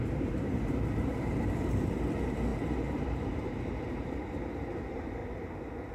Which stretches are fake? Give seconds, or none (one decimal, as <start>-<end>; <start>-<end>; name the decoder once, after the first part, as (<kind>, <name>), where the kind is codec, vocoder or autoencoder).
0.0-5.9 (vocoder, BigVGAN v2)